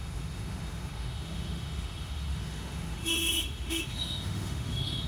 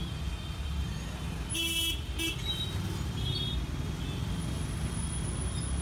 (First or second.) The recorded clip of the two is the second